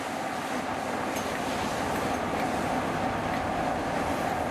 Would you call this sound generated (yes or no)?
no